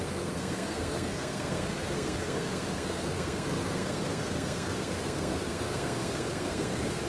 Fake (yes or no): yes